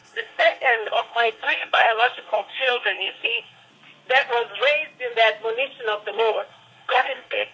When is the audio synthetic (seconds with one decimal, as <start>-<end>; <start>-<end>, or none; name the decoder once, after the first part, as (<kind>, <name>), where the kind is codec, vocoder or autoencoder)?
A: 0.0-3.7 (codec, SNAC); 6.1-7.5